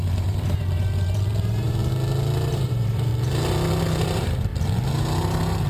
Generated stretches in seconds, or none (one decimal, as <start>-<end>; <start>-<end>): 0.0-1.8; 2.5-3.1; 4.0-4.5

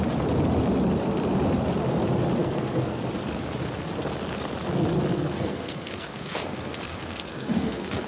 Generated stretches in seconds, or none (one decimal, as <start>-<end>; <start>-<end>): 2.4-3.0; 5.1-8.1

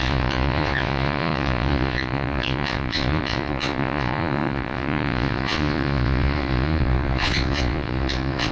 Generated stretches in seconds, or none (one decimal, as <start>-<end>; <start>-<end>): 0.0-8.5

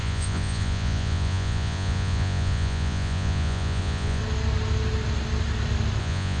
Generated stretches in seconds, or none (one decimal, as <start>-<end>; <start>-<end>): 0.0-4.2; 6.0-6.4

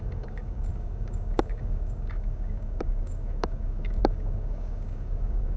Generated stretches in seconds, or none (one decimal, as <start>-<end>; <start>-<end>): 0.0-5.6

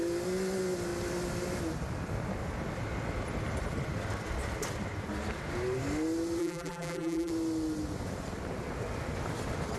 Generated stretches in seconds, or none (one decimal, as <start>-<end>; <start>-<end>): 6.4-7.3

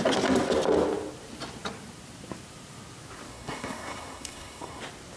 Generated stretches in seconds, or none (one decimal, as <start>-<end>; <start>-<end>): 3.3-4.8